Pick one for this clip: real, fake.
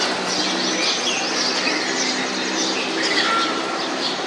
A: real